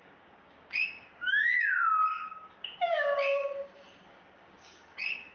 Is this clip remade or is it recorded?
remade